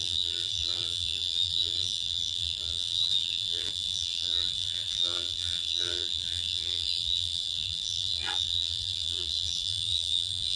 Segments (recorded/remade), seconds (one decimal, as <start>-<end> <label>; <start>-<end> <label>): 0.0-10.6 remade